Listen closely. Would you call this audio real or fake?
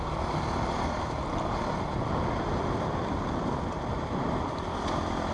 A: real